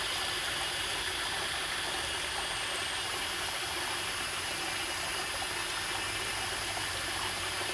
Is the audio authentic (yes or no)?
yes